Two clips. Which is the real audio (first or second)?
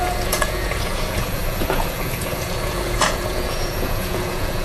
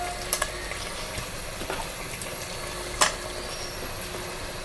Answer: second